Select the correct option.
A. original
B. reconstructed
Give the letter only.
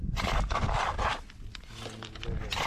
A